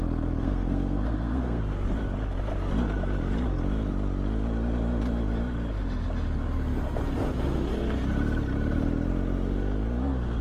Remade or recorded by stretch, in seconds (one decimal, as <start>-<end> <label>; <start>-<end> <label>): 0.0-0.4 recorded; 0.4-1.6 remade; 1.6-10.4 recorded